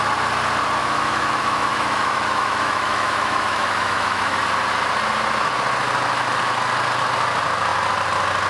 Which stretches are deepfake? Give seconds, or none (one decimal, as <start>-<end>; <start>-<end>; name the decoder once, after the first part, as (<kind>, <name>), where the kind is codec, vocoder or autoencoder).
0.8-4.4 (autoencoder, DAC-VAE)